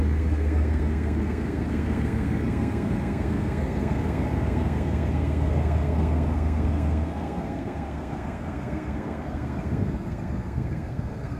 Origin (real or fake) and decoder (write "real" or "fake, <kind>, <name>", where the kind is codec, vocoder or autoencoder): fake, codec, SNAC